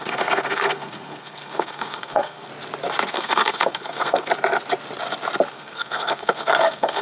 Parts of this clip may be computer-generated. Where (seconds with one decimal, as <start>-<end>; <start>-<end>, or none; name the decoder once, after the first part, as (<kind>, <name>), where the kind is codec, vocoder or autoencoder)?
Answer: 0.0-2.5 (codec, SNAC); 3.1-4.3; 5.5-7.0

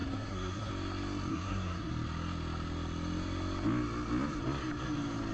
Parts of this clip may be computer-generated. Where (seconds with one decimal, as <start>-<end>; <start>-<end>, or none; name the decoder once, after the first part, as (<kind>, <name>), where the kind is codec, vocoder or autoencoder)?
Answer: 0.0-0.7 (codec, SNAC); 1.3-1.9

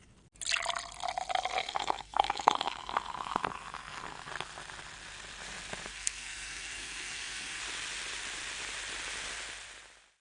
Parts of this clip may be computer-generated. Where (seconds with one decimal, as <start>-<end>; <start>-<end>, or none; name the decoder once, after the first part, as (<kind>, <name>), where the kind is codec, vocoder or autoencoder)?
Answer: 1.6-4.3 (codec, SNAC); 5.9-7.6

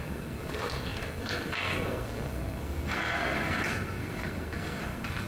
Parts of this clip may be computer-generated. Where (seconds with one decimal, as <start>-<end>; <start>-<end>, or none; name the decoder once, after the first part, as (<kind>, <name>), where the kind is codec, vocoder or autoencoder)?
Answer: 0.0-5.3 (codec, SNAC)

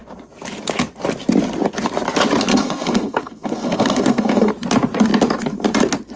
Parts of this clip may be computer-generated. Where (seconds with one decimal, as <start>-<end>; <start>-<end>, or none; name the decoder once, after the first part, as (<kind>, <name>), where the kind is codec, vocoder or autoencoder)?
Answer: 2.5-4.5 (codec, SNAC)

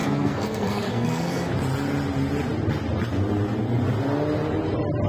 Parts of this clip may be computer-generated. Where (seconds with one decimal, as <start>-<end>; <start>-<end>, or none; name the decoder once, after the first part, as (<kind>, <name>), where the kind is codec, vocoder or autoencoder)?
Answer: 0.0-1.5 (codec, SNAC)